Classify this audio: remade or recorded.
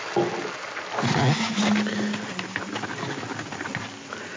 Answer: recorded